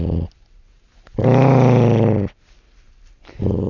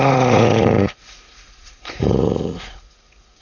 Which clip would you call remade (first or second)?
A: second